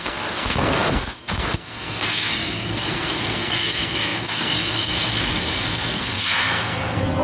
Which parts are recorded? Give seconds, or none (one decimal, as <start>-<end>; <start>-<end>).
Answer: none